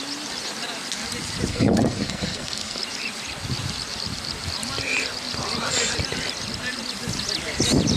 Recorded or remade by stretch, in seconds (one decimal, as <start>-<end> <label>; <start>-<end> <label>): 0.0-1.5 recorded; 1.5-2.8 remade; 2.8-8.0 recorded